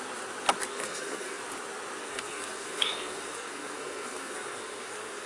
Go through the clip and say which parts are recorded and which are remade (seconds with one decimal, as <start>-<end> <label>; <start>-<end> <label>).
0.0-0.7 recorded; 0.7-1.4 remade; 1.4-2.0 recorded; 2.0-5.3 remade